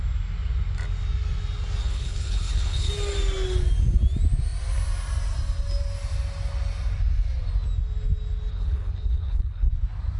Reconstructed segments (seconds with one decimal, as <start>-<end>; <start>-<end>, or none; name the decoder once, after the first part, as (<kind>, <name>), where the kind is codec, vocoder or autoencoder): 1.8-2.9 (codec, HILCodec); 8.5-9.7

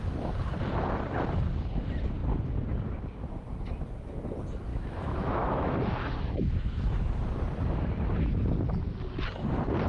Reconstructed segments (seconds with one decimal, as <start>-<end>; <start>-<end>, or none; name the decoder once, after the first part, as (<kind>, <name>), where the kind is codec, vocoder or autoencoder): 4.7-7.2 (autoencoder, DAC-VAE)

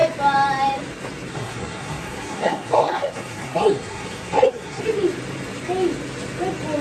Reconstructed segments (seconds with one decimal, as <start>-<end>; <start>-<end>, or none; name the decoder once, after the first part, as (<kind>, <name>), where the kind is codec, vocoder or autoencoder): 1.3-4.8 (codec, SNAC)

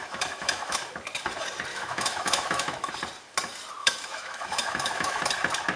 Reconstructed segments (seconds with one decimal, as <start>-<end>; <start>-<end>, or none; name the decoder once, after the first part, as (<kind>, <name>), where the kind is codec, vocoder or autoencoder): 0.0-0.8 (autoencoder, DAC-VAE); 1.7-2.9; 3.8-5.3

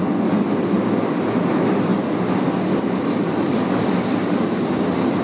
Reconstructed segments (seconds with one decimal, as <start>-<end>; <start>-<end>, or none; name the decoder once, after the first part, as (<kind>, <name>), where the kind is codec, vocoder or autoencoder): none